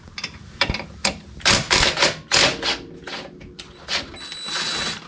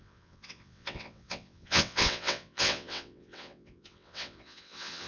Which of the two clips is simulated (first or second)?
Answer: second